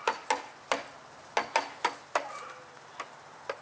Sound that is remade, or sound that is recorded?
recorded